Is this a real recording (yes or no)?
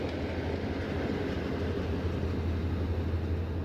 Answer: yes